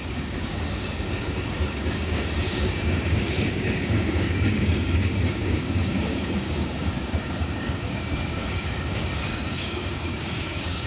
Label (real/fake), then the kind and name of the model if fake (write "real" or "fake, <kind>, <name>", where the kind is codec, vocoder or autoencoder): fake, codec, DAC